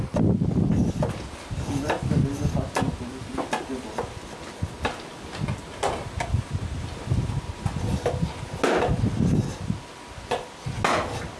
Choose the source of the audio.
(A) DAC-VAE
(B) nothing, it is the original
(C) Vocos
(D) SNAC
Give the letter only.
B